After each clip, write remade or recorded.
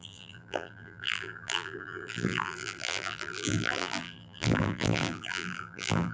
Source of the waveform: remade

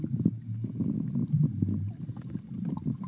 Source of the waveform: recorded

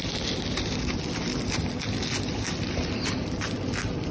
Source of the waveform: remade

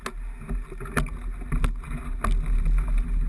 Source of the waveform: recorded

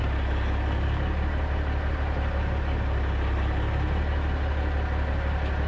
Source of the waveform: recorded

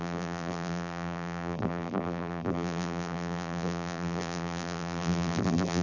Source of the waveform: remade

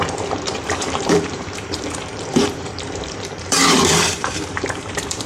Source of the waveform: remade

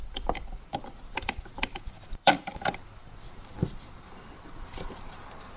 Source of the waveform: remade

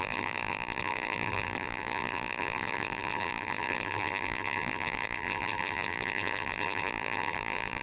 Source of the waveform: remade